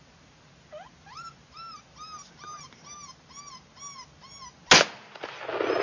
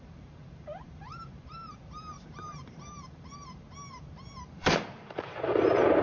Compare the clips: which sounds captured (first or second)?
first